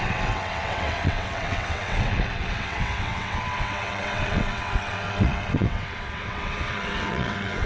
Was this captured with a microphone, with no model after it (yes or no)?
no